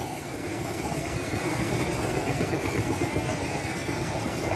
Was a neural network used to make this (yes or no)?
yes